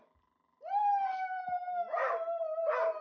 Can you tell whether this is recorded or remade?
recorded